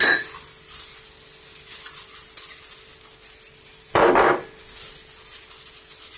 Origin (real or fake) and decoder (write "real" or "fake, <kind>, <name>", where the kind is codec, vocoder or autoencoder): real